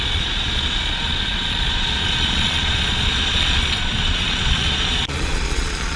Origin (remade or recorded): remade